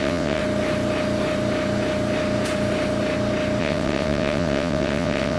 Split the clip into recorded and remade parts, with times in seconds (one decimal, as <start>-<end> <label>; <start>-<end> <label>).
0.0-0.4 remade; 0.4-3.6 recorded; 3.6-5.4 remade